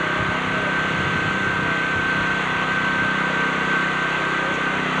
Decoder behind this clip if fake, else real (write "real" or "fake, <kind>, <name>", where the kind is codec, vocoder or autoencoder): real